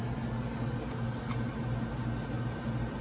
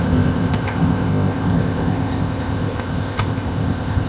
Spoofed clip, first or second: second